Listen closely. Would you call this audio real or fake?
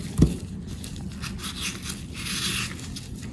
real